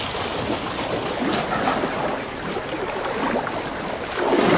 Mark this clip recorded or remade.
recorded